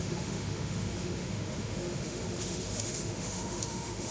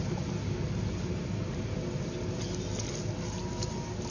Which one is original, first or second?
second